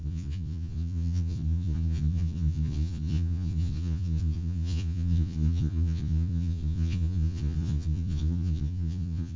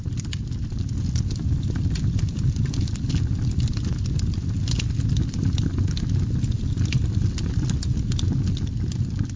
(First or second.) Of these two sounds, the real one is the second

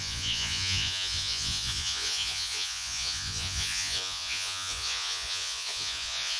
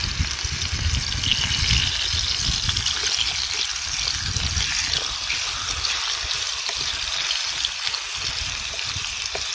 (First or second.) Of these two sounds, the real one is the second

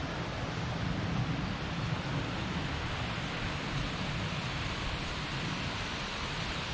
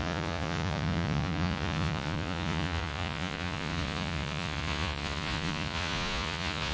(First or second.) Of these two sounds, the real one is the first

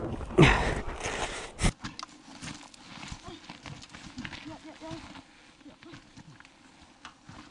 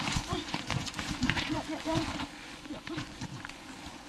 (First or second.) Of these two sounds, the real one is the first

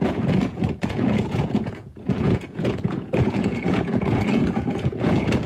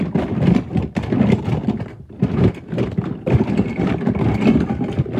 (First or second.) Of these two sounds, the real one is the second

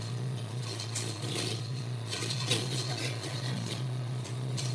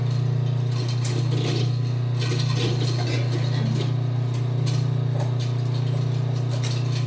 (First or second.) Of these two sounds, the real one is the second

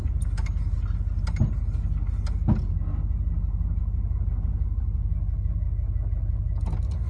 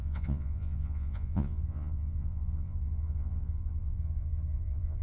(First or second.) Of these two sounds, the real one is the first